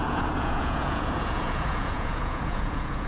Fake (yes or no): yes